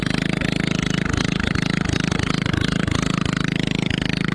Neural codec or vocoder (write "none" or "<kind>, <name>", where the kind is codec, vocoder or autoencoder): none